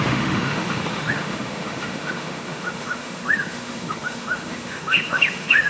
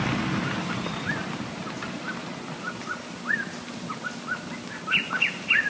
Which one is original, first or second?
second